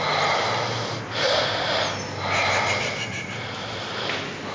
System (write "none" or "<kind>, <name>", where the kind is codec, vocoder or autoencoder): none